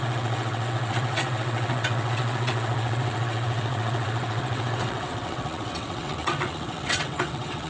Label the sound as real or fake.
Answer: fake